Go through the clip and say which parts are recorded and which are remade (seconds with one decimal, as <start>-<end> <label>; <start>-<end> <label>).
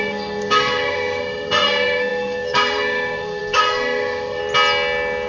0.0-4.4 remade; 4.4-5.3 recorded